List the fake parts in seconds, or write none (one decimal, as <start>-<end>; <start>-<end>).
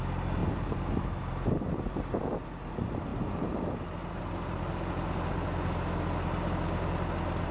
none